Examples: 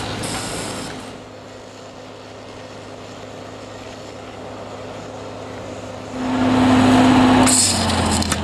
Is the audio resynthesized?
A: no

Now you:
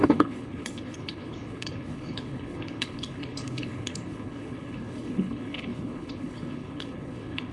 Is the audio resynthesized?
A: yes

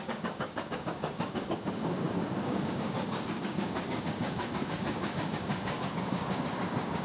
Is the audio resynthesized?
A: yes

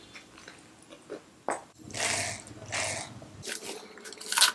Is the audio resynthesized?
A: no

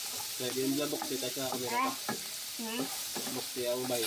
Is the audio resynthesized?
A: no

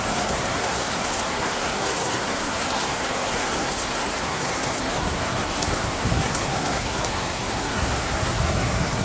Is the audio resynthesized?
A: yes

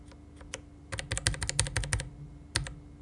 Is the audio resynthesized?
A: no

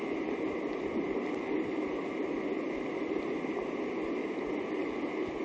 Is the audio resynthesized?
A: no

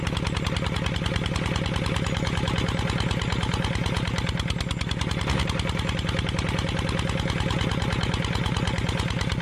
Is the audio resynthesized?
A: no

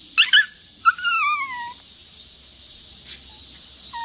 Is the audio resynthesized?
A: no